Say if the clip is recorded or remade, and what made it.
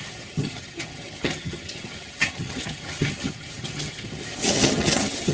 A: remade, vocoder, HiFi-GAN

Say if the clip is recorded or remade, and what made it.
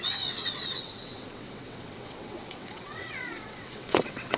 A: remade, vocoder, WaveNeXt